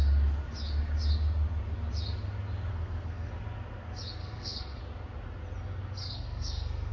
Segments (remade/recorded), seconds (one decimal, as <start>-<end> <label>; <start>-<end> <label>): 0.0-2.7 recorded; 2.7-3.3 remade; 3.3-4.2 recorded; 4.2-4.8 remade; 4.8-6.0 recorded; 6.0-6.9 remade